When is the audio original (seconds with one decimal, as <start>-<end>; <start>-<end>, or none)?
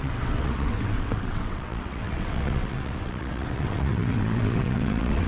none